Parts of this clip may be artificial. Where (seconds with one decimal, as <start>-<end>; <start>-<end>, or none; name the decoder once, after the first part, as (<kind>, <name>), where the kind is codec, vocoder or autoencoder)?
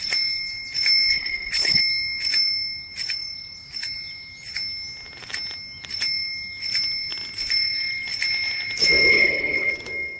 1.1-1.8 (codec, HILCodec); 9.1-9.7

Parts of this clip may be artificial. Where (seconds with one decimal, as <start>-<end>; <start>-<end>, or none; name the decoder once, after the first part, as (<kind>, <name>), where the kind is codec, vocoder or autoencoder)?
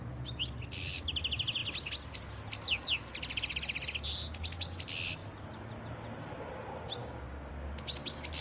7.0-7.5 (codec, DAC)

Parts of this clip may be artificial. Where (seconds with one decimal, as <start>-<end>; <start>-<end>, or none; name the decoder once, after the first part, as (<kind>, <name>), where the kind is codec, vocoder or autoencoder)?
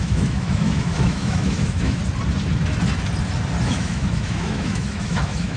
0.0-2.0 (autoencoder, DAC-VAE); 3.6-5.6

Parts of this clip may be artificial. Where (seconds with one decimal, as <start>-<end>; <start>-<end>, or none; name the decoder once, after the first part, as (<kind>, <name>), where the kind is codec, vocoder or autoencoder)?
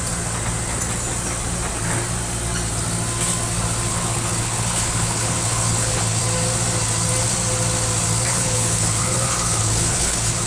3.9-6.2 (codec, HILCodec); 8.3-10.5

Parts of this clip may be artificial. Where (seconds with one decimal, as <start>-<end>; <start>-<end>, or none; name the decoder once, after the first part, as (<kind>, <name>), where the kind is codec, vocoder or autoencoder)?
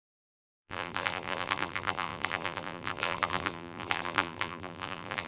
0.0-5.3 (vocoder, BigVGAN v2)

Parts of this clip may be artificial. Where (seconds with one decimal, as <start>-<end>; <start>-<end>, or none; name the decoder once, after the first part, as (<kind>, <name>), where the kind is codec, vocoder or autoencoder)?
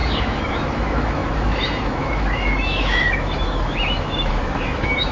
0.0-5.1 (autoencoder, DAC-VAE)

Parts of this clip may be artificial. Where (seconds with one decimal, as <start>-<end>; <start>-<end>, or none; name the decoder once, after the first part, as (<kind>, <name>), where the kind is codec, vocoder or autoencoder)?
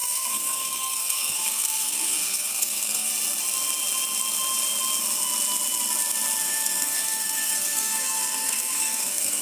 0.0-3.1 (codec, SNAC); 6.4-9.4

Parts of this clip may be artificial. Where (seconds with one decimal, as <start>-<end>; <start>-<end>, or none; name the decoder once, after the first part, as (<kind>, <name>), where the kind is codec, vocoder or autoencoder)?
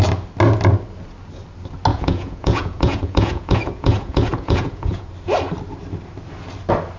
1.9-5.1 (vocoder, Vocos)